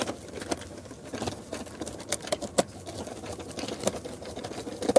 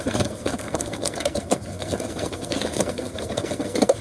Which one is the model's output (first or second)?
second